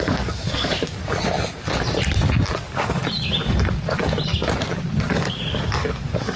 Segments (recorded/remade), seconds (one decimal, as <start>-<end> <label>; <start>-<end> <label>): 0.0-1.0 remade; 1.0-2.5 recorded; 2.5-3.0 remade; 3.0-5.1 recorded; 5.1-6.4 remade